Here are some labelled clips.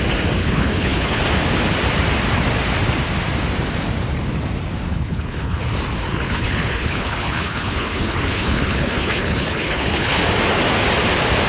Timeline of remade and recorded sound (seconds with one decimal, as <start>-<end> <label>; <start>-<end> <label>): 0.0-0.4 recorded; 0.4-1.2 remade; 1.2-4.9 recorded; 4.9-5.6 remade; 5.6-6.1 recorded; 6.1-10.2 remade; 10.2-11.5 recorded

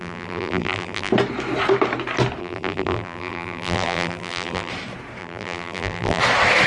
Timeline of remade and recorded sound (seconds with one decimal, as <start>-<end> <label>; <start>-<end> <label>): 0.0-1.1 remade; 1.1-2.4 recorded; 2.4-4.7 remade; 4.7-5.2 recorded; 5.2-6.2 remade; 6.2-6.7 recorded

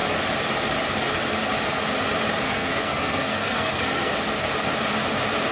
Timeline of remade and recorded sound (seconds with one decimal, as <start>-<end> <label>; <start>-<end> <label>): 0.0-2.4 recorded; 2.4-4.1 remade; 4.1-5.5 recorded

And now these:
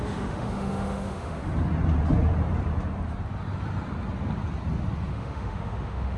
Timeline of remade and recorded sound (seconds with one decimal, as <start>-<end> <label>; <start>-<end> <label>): 0.0-1.4 remade; 1.4-5.1 recorded; 5.1-6.2 remade